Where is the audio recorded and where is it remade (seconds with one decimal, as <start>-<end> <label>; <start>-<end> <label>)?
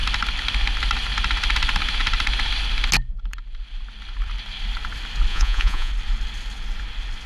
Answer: 0.0-5.3 recorded; 5.3-5.9 remade; 5.9-7.3 recorded